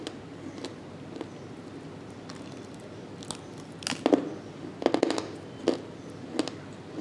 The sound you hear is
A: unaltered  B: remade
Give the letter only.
A